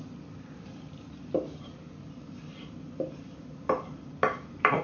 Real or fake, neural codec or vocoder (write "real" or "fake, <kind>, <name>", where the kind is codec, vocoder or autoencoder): fake, vocoder, BigVGAN v2